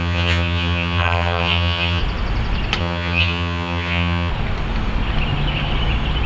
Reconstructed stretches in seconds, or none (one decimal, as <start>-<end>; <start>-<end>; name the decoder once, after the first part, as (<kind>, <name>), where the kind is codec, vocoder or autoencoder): 0.0-2.0 (vocoder, HiFi-GAN); 2.8-4.3